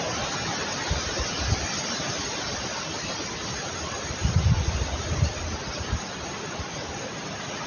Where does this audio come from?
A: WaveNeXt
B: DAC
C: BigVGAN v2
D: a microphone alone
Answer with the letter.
D